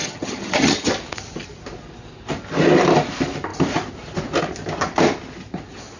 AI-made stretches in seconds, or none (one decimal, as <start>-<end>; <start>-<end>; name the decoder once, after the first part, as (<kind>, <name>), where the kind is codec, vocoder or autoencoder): 0.0-0.9 (vocoder, HiFi-GAN)

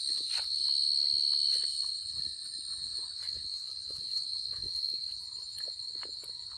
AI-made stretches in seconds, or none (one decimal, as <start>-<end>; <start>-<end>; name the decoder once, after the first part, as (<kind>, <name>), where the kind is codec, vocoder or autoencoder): 4.6-5.3 (vocoder, BigVGAN v2)

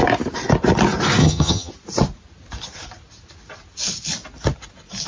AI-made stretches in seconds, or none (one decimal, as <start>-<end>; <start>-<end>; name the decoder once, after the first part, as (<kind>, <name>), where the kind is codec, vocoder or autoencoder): 1.2-1.7 (vocoder, HiFi-GAN)

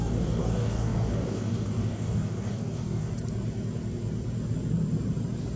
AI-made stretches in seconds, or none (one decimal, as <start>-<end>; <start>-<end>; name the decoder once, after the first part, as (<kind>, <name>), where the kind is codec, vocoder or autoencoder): 0.0-3.1 (codec, DAC)

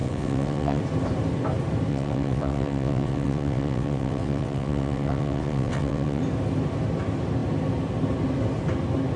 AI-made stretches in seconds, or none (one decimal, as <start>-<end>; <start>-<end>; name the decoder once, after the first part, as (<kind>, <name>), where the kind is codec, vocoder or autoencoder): 0.0-0.8 (vocoder, WaveNeXt); 1.9-6.2

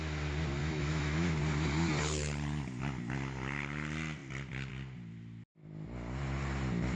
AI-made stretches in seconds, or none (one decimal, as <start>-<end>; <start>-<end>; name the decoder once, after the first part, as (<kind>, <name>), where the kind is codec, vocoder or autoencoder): 0.6-1.4 (autoencoder, DAC-VAE)

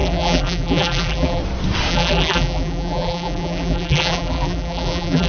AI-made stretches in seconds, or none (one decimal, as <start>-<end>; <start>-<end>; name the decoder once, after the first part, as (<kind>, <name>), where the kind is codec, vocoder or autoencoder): 0.0-1.4 (vocoder, BigVGAN v2); 1.9-5.3